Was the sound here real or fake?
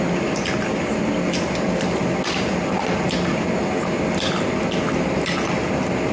real